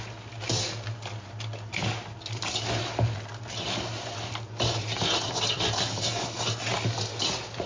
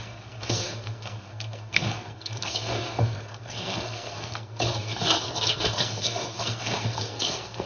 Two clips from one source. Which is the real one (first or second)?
first